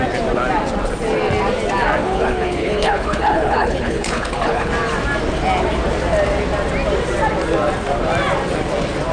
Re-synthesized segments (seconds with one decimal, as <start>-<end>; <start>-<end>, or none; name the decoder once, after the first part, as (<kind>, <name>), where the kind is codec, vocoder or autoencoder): 2.0-4.7 (codec, HILCodec)